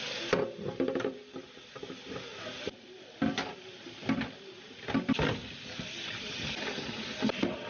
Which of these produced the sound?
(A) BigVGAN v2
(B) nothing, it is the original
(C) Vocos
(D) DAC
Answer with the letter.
B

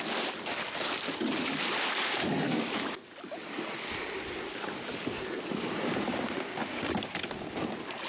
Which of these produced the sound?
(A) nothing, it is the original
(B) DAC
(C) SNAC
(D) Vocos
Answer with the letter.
A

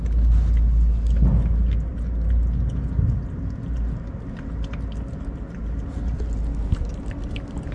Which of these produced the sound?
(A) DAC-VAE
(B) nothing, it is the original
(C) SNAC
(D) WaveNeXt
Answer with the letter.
B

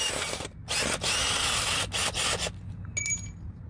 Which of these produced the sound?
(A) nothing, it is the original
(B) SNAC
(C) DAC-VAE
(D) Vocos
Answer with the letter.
A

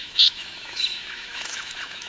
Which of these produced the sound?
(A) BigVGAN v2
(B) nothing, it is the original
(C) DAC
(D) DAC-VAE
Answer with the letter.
D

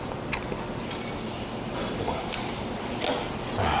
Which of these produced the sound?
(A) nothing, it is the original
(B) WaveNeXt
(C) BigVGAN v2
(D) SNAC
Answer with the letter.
A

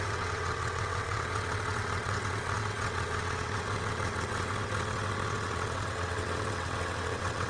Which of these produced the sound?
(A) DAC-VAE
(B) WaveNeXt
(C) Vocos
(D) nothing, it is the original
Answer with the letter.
B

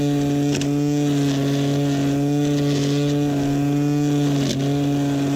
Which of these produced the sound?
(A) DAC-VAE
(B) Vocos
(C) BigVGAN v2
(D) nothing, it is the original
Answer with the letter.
D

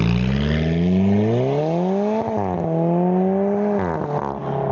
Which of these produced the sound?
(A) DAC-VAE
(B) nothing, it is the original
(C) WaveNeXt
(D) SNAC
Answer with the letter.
B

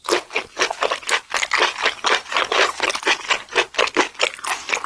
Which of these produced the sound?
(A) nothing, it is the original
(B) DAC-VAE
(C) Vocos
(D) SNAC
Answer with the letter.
A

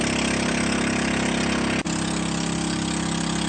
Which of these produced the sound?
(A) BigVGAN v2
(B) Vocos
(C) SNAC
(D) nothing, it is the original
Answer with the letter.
D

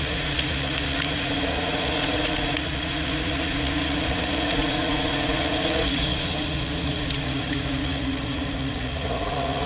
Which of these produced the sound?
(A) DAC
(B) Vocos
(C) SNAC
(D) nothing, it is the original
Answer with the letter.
B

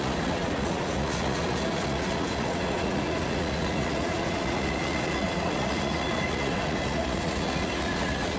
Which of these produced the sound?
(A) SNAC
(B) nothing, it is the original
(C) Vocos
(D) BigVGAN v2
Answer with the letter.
C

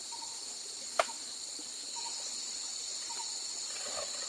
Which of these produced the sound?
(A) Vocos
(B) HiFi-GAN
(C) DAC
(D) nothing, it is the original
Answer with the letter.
D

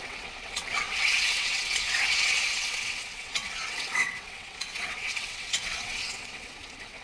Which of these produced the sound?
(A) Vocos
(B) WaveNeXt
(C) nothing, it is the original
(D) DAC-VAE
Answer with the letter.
B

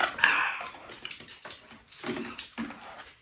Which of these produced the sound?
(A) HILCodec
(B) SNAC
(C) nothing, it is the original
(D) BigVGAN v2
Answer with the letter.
C